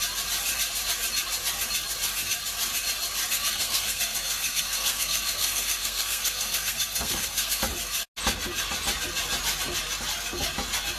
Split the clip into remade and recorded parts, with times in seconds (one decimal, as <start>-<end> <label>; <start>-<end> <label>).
0.0-3.3 recorded; 3.3-7.6 remade; 7.6-11.0 recorded